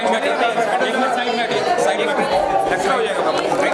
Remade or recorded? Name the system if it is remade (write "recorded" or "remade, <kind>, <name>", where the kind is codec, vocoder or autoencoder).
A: recorded